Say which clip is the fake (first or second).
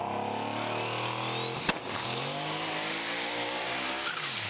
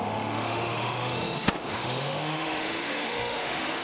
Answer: second